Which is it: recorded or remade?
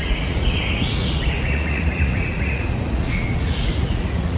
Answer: remade